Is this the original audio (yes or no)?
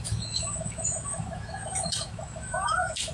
no